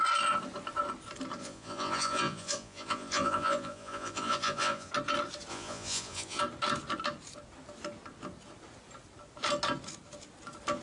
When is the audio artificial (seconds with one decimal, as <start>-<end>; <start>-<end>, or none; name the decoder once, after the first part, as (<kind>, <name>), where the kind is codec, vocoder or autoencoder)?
1.4-4.9 (vocoder, Vocos); 5.5-6.4